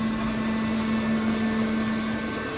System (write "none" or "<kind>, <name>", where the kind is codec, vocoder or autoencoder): none